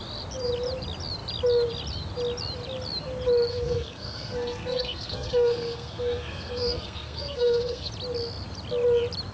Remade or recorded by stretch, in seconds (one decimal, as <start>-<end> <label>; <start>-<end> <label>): 0.0-3.5 recorded; 3.5-7.9 remade; 7.9-9.3 recorded